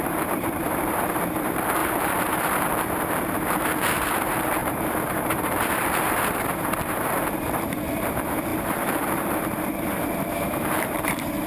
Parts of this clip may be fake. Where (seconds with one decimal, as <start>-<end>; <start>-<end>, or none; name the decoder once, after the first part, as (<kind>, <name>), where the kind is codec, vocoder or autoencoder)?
0.0-11.5 (vocoder, BigVGAN v2)